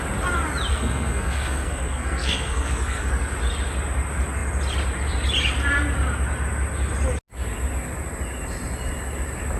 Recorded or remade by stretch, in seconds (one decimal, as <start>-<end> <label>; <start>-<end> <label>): 0.0-0.7 recorded; 0.7-3.1 remade; 3.1-9.6 recorded